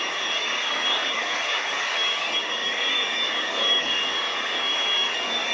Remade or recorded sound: remade